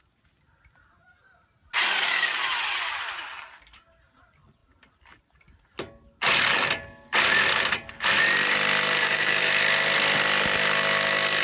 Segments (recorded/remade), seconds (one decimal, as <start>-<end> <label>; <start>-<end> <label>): 0.0-9.0 recorded; 9.0-9.5 remade; 9.5-11.4 recorded